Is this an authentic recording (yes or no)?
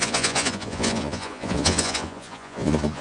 no